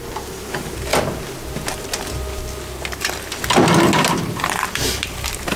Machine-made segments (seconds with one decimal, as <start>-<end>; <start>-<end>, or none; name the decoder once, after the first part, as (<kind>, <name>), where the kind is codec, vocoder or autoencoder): 0.0-0.9 (vocoder, BigVGAN v2); 4.3-5.6